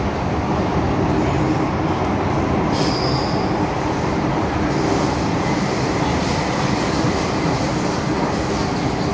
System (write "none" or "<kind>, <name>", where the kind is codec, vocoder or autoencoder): none